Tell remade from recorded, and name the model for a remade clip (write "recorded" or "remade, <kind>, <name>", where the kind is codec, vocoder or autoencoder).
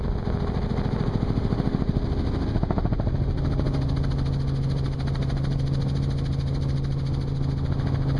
recorded